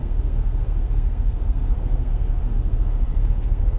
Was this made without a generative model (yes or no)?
no